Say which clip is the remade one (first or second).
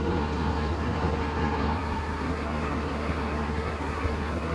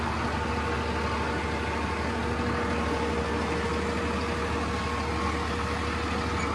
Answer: first